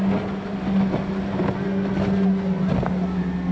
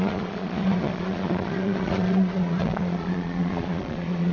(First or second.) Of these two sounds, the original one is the first